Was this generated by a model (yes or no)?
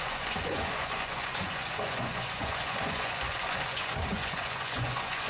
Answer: yes